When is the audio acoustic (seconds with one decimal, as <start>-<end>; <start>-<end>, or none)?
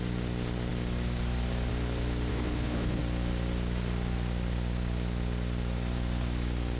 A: 0.0-2.3; 3.0-6.8